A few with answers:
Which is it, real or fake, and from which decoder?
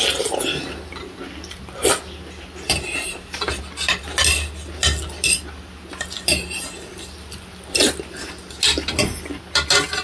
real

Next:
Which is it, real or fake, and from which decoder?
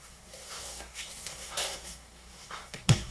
fake, codec, SNAC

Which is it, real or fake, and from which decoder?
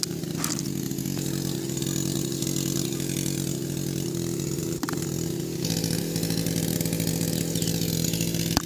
real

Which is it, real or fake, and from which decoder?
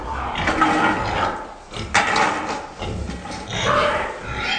real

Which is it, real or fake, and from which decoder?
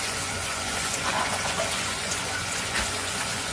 fake, vocoder, Vocos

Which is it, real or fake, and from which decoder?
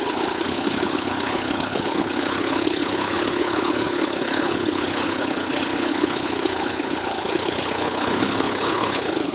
fake, codec, HILCodec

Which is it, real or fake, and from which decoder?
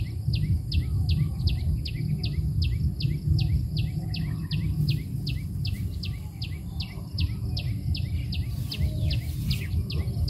real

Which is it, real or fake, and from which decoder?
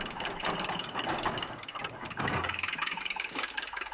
fake, codec, DAC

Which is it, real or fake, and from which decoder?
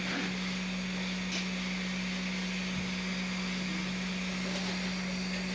real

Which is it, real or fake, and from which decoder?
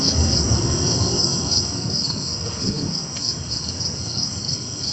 fake, codec, SNAC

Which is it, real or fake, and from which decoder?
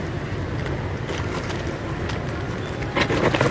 real